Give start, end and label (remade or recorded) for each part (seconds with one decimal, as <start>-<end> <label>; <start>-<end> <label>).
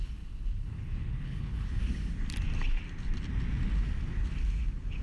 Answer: 0.0-1.7 remade; 1.7-5.0 recorded